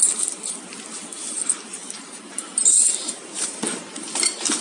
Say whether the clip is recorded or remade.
recorded